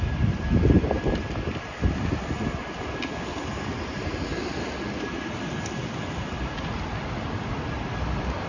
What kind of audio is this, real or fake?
real